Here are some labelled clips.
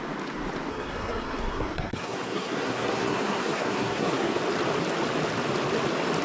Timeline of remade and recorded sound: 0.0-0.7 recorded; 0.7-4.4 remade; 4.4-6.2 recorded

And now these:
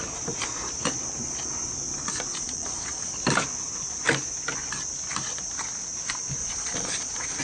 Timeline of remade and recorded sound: 0.0-2.3 recorded; 2.3-3.1 remade; 3.1-6.4 recorded; 6.4-7.4 remade

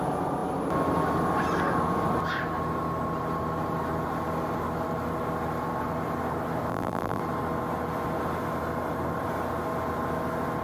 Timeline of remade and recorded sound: 0.0-6.7 recorded; 6.7-7.2 remade; 7.2-10.6 recorded

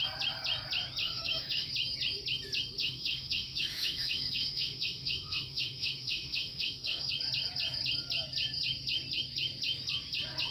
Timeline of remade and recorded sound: 0.0-1.0 recorded; 1.0-1.7 remade; 1.7-2.8 recorded; 2.8-7.1 remade; 7.1-10.5 recorded

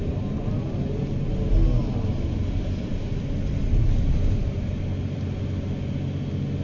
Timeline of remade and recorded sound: 0.0-6.6 recorded

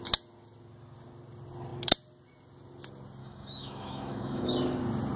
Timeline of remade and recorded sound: 0.0-3.2 recorded; 3.2-4.5 remade; 4.5-5.2 recorded

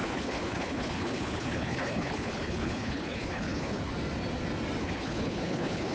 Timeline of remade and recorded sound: 0.0-3.9 remade; 3.9-4.8 recorded; 4.8-5.9 remade